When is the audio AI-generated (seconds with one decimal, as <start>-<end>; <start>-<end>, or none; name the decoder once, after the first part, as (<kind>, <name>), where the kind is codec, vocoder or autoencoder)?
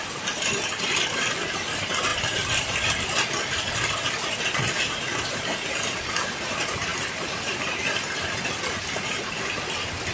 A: none